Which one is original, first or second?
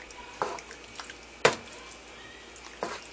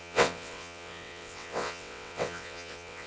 first